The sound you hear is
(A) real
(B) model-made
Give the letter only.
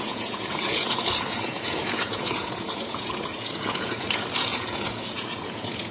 B